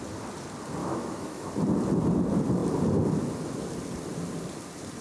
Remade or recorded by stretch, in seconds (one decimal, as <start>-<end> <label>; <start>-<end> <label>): 0.0-0.8 recorded; 0.8-1.5 remade; 1.5-5.0 recorded